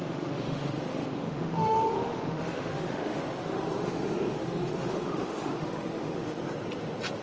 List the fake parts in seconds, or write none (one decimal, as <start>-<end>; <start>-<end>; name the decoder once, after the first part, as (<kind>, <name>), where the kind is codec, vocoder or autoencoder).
0.0-6.4 (autoencoder, DAC-VAE)